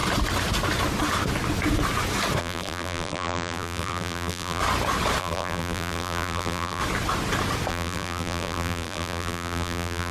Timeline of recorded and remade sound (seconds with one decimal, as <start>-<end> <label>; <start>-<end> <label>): 0.0-2.4 recorded; 2.4-4.6 remade; 4.6-5.2 recorded; 5.2-6.8 remade; 6.8-7.7 recorded; 7.7-10.1 remade